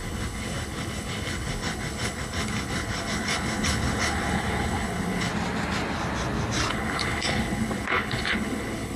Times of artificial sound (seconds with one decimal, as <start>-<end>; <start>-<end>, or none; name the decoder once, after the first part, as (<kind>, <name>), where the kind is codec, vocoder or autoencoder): 0.0-5.3 (codec, HILCodec); 6.7-9.0